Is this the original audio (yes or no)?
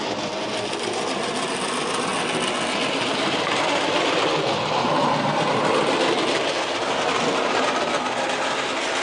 yes